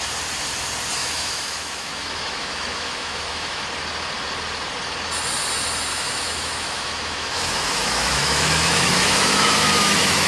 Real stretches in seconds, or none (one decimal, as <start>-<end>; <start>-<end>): 0.0-1.0; 3.6-5.9